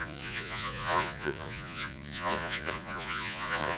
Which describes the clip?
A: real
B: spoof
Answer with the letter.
B